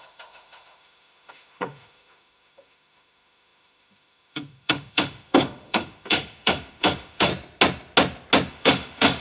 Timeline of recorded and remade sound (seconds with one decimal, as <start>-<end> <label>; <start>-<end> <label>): 0.0-7.3 remade; 7.3-8.5 recorded; 8.5-9.2 remade